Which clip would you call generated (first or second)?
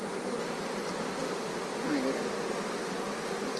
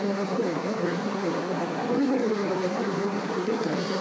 second